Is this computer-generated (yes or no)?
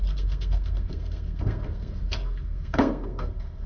yes